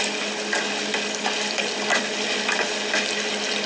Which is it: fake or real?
real